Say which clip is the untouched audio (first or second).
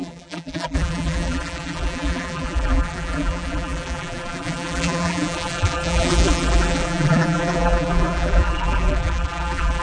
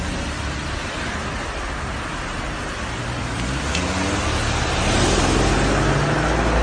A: second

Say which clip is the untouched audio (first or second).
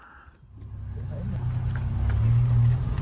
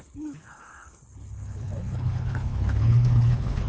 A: first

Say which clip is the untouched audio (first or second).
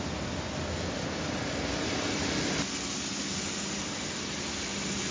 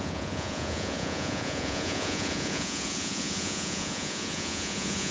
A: first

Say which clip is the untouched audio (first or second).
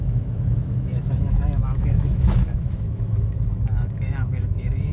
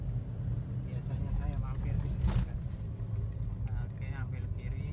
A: second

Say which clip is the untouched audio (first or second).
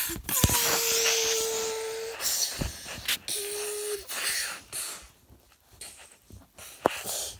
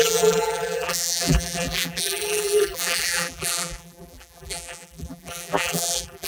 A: first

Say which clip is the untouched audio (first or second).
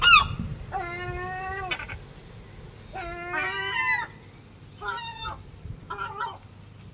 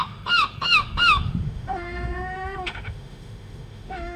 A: first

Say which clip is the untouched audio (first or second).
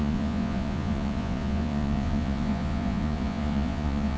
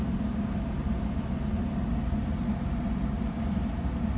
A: second